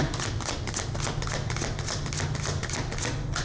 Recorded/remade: recorded